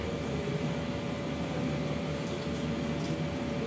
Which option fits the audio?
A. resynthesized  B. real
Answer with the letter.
B